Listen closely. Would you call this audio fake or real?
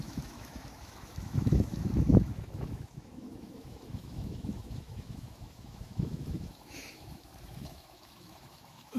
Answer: fake